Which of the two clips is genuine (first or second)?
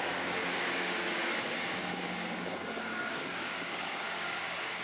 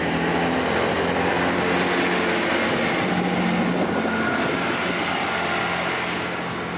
second